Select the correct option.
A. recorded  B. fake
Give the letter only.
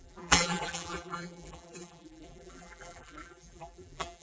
B